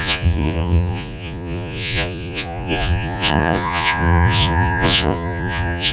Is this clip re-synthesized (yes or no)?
yes